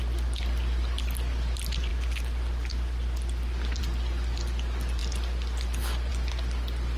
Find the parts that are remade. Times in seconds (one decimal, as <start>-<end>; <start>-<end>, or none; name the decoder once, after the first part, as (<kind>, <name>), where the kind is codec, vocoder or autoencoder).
none